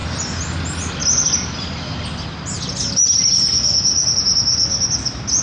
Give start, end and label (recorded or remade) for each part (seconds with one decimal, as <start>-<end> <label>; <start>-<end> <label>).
0.0-5.4 recorded